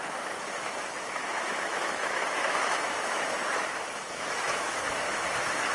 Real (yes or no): no